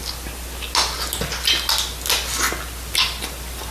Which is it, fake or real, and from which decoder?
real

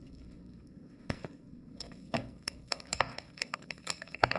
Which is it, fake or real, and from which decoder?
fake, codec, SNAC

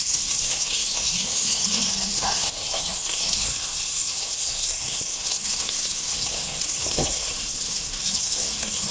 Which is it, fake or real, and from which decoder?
fake, codec, SNAC